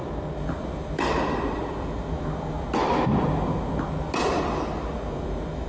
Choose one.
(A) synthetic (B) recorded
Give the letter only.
B